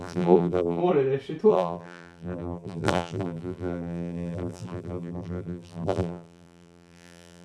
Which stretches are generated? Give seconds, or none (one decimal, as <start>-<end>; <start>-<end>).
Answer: 0.0-0.8; 1.5-7.4